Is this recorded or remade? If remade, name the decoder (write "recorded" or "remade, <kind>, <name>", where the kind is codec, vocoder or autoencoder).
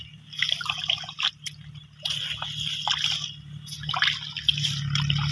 recorded